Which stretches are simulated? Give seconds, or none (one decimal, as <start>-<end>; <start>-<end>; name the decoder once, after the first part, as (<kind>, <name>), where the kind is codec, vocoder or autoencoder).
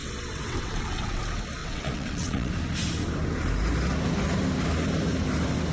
0.0-1.2 (vocoder, WaveNeXt); 1.6-2.5